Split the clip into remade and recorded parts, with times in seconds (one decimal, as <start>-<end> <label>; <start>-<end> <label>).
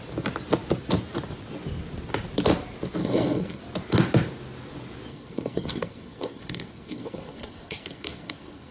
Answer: 0.0-3.0 recorded; 3.0-3.6 remade; 3.6-5.1 recorded; 5.1-8.7 remade